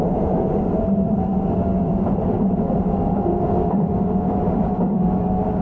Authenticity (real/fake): fake